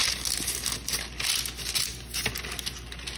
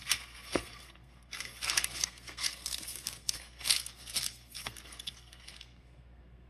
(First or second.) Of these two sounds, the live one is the first